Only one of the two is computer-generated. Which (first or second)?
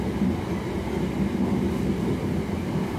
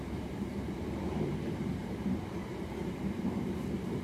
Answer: second